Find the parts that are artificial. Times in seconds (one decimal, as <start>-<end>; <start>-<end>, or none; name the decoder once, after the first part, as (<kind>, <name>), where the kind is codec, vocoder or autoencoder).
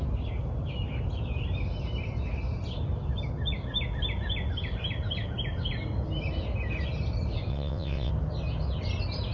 7.5-8.1 (vocoder, WaveNeXt)